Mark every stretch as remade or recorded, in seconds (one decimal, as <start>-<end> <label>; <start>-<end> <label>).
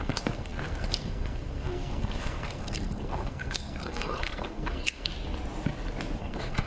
0.0-5.1 remade; 5.1-6.2 recorded; 6.2-6.7 remade